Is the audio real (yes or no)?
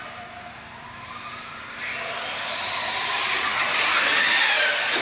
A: yes